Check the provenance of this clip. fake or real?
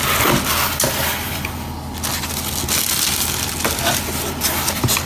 real